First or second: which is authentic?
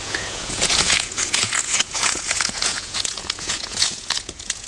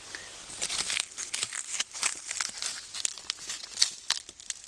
second